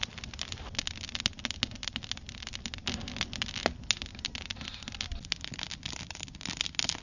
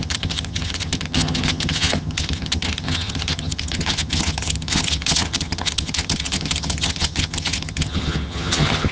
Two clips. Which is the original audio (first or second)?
first